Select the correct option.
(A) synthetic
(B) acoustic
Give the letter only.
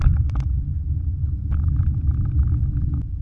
B